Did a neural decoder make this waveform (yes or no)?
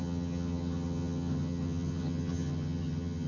yes